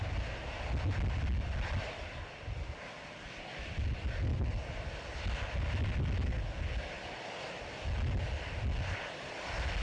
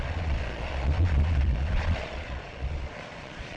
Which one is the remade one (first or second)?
second